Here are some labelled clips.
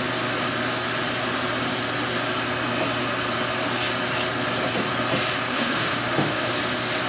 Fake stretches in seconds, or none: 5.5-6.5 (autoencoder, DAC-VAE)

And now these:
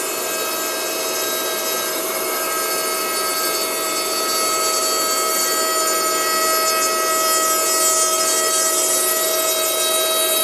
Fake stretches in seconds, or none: 1.9-2.5 (autoencoder, DAC-VAE)

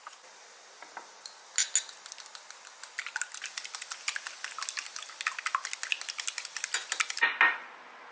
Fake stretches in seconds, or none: none